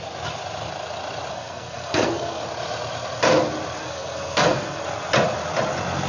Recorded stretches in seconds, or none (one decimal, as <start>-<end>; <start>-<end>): 0.0-1.3; 2.4-3.8; 4.8-6.1